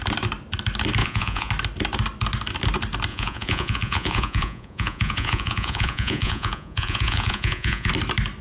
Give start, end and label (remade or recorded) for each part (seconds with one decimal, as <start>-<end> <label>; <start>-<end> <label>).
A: 0.0-1.0 recorded; 1.0-1.5 remade; 1.5-3.1 recorded; 3.1-7.9 remade; 7.9-8.4 recorded

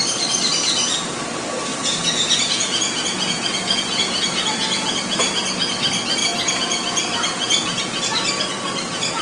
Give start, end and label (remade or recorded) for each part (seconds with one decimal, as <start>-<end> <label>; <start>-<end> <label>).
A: 0.0-1.7 recorded; 1.7-5.0 remade; 5.0-6.2 recorded; 6.2-8.0 remade; 8.0-9.2 recorded